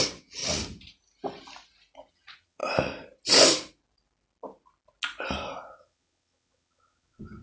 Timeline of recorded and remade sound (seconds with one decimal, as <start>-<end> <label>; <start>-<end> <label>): 0.0-0.4 remade; 0.4-2.1 recorded; 2.1-2.6 remade; 2.6-5.6 recorded; 5.6-7.4 remade